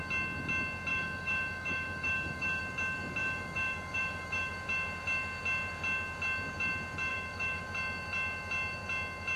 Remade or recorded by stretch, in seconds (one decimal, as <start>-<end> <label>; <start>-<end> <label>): 0.0-0.9 recorded; 0.9-2.6 remade; 2.6-3.2 recorded; 3.2-4.5 remade; 4.5-7.1 recorded; 7.1-7.6 remade; 7.6-9.4 recorded